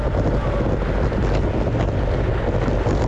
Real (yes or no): yes